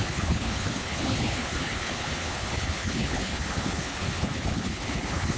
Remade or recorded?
remade